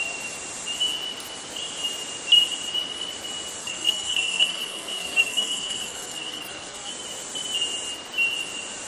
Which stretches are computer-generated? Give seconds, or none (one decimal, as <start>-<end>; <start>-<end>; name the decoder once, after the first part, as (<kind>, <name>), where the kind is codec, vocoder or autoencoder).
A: 3.6-6.9 (codec, SNAC)